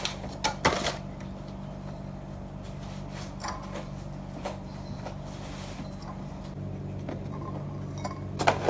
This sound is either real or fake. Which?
real